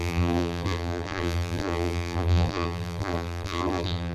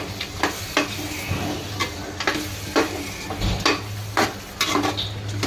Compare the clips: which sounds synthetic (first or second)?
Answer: first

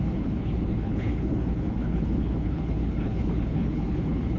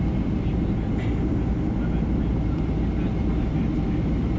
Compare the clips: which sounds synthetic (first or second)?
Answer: first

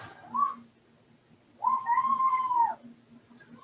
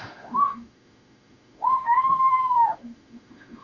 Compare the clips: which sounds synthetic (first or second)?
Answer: second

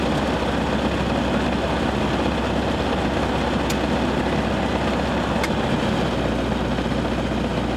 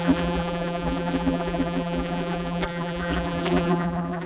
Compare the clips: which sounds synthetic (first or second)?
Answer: second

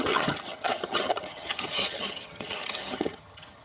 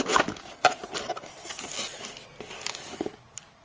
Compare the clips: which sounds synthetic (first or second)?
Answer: first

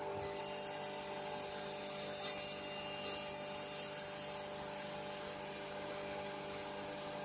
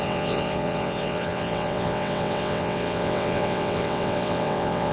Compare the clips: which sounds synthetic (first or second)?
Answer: second